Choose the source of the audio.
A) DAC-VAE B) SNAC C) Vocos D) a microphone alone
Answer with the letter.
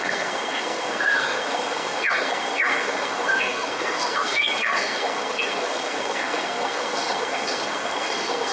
B